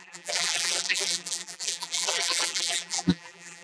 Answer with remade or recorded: remade